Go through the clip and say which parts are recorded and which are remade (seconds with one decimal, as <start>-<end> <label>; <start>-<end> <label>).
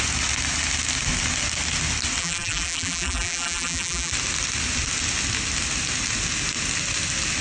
0.0-2.2 recorded; 2.2-4.1 remade; 4.1-7.4 recorded